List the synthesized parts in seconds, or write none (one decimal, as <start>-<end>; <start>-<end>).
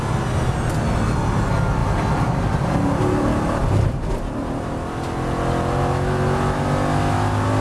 1.8-4.0